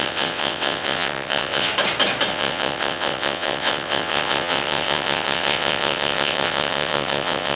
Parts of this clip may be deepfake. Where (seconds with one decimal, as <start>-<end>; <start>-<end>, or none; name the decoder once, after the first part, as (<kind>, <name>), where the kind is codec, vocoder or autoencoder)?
0.0-1.7 (vocoder, WaveNeXt); 2.3-7.5

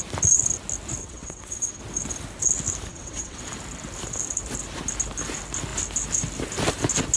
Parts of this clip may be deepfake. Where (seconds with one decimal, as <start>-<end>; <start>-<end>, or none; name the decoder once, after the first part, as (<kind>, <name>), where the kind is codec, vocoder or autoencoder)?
1.0-1.8 (vocoder, WaveNeXt); 2.9-3.4

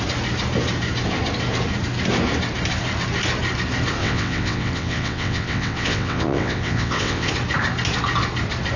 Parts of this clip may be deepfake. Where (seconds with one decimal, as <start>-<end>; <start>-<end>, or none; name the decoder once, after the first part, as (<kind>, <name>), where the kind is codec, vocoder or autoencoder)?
4.0-7.3 (vocoder, WaveNeXt)

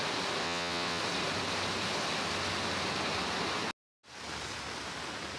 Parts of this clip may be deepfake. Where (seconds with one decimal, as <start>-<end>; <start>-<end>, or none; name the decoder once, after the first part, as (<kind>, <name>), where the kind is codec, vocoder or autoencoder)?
0.4-1.0 (vocoder, WaveNeXt)

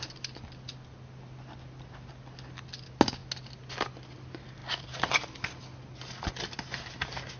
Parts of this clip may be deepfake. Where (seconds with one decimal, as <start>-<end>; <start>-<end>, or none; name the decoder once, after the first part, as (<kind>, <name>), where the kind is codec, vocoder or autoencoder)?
none